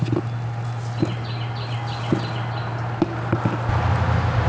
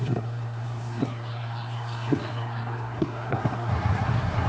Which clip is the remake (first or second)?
second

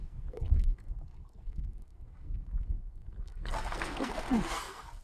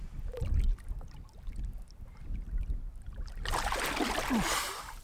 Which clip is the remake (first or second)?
first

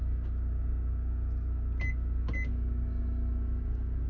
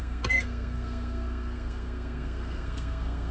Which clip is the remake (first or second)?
second